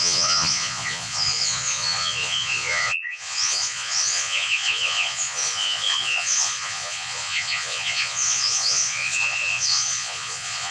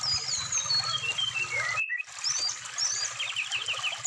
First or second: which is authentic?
second